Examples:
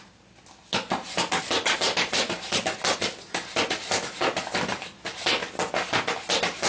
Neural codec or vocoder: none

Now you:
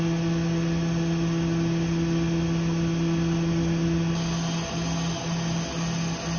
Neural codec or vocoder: none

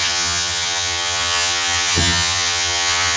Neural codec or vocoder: vocoder, HiFi-GAN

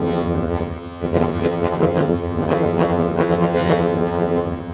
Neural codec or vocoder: vocoder, HiFi-GAN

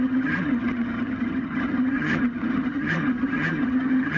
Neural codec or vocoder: vocoder, HiFi-GAN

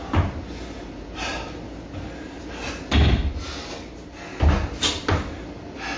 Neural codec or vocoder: none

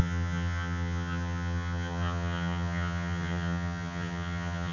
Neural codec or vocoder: vocoder, HiFi-GAN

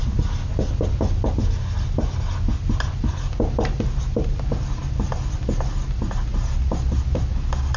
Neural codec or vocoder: none